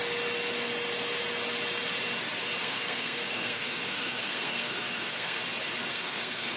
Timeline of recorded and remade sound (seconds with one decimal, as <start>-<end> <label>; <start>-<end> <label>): 0.0-2.6 recorded; 2.6-5.4 remade; 5.4-5.9 recorded; 5.9-6.6 remade